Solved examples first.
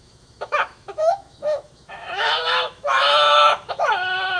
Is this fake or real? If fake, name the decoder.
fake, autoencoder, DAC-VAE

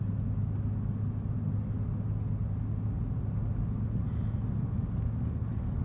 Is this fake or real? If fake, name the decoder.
real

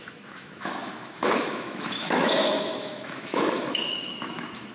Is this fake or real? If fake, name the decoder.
fake, autoencoder, DAC-VAE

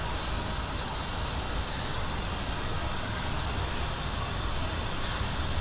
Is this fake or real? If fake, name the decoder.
real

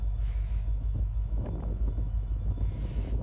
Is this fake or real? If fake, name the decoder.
fake, autoencoder, DAC-VAE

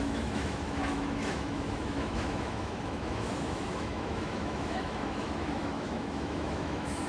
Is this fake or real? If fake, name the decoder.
fake, autoencoder, DAC-VAE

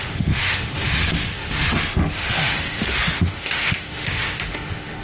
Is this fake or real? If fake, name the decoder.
fake, autoencoder, DAC-VAE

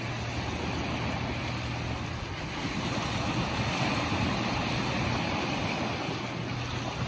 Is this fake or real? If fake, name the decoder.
real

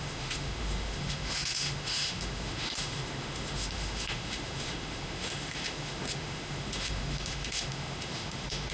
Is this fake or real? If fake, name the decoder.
fake, autoencoder, DAC-VAE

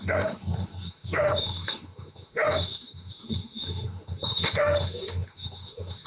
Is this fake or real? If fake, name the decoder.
fake, autoencoder, DAC-VAE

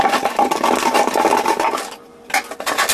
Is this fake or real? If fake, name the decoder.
real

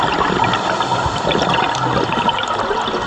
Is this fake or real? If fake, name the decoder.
real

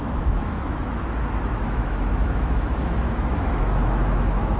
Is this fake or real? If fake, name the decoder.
fake, autoencoder, DAC-VAE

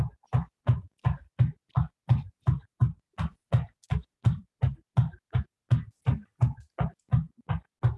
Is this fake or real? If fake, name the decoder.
real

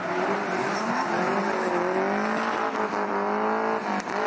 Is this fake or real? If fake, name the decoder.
real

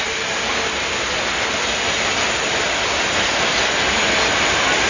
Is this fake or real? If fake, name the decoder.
real